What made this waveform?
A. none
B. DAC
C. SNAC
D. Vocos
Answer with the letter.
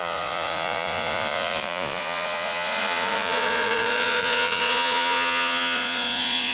D